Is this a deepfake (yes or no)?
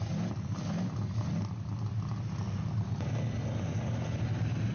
no